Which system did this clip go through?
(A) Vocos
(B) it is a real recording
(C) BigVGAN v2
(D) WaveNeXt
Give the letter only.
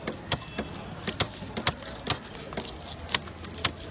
B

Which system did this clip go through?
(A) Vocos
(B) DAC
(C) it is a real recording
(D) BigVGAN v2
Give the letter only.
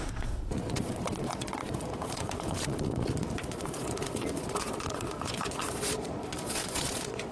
A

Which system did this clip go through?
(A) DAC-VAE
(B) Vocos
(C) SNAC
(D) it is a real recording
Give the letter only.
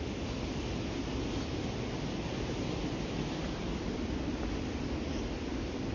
D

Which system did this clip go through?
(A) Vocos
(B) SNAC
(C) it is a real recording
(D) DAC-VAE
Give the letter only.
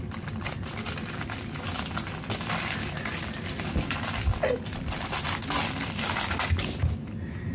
C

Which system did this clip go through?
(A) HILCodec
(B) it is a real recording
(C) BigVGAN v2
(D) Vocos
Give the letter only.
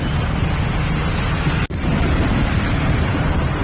B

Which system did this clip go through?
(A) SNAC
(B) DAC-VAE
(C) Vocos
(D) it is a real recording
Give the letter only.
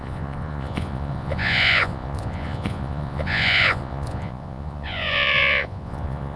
C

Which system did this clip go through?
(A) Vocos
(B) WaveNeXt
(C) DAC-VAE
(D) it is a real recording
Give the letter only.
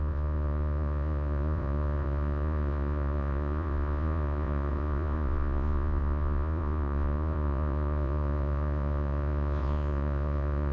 A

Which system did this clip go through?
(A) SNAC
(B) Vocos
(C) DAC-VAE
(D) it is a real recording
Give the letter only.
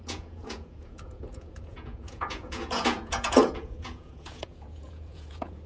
B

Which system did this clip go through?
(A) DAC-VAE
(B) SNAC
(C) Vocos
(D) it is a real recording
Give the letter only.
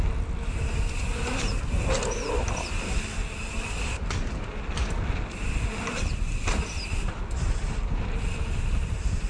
D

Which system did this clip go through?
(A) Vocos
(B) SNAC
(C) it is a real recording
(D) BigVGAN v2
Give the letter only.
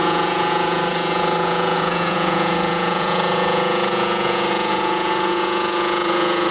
A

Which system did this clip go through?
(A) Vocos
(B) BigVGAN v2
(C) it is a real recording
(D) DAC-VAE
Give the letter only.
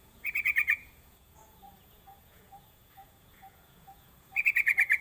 A